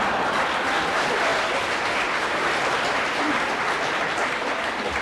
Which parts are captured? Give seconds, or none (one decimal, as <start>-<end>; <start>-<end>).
0.0-5.0